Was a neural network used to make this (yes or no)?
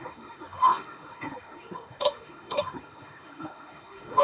yes